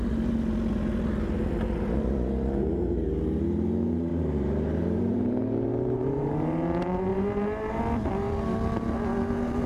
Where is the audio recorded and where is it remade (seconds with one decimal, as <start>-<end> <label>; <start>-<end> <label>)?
0.0-4.1 recorded; 4.1-6.3 remade; 6.3-7.1 recorded; 7.1-7.8 remade; 7.8-9.7 recorded